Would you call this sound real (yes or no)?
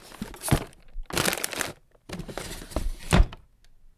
yes